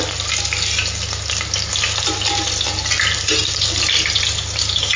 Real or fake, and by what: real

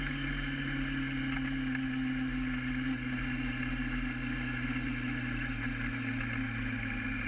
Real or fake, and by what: real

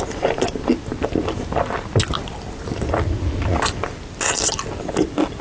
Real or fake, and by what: real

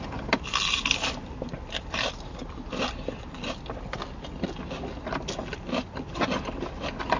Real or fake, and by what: real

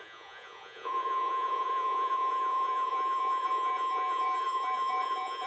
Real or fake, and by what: fake, vocoder, Vocos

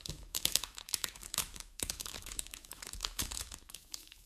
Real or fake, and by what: fake, autoencoder, DAC-VAE